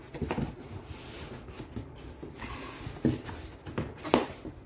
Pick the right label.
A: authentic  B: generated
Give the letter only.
A